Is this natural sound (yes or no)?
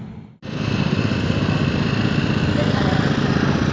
yes